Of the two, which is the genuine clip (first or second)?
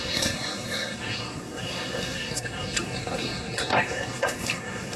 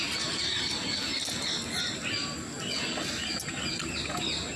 second